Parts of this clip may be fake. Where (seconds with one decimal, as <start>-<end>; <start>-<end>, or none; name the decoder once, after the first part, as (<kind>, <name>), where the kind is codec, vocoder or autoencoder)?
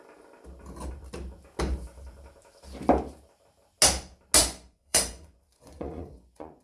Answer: 4.4-6.6 (vocoder, Vocos)